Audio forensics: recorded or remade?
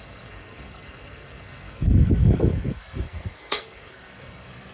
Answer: remade